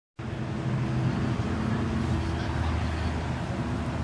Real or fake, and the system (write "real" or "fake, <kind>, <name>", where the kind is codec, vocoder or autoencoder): real